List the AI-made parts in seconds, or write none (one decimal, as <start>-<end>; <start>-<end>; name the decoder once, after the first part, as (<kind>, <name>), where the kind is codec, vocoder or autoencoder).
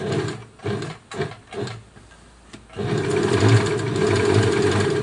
none